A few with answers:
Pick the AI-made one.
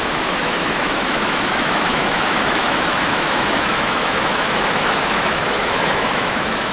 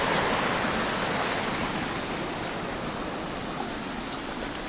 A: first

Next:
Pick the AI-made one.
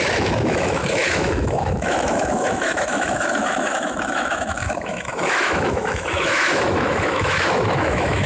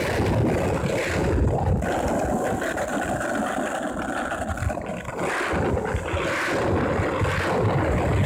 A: first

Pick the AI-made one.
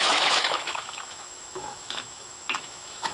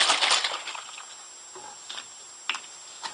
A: first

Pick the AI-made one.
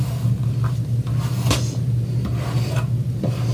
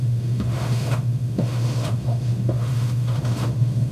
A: second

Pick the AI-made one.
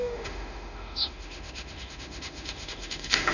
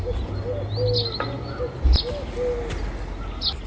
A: first